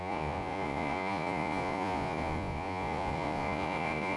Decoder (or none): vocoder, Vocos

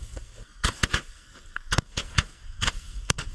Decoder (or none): codec, SNAC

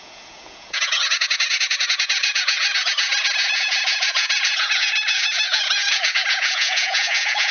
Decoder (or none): vocoder, Vocos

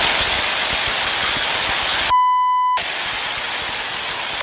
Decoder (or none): none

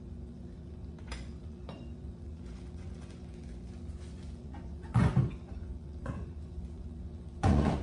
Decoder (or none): vocoder, Vocos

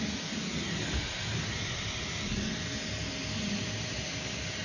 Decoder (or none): none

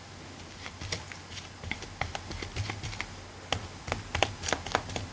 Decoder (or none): none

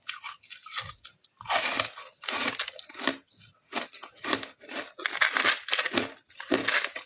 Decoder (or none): none